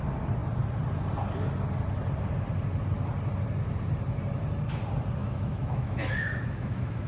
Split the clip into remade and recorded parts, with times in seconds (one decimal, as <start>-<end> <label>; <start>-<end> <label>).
0.0-5.2 recorded; 5.2-7.1 remade